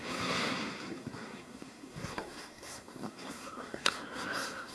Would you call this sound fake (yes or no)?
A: yes